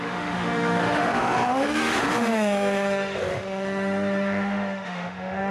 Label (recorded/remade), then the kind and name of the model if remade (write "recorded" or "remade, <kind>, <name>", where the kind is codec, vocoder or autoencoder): remade, autoencoder, DAC-VAE